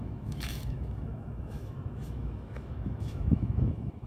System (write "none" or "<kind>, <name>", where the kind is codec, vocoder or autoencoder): autoencoder, DAC-VAE